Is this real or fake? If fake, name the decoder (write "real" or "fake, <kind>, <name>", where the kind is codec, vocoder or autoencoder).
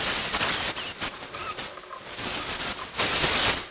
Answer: real